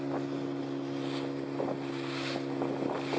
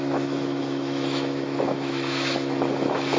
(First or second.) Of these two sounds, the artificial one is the second